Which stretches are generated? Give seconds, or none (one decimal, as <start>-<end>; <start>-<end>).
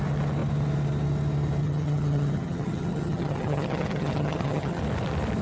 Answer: 1.6-4.8